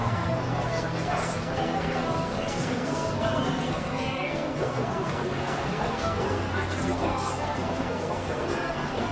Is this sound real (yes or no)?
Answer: no